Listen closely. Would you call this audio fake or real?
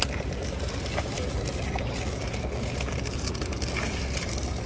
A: real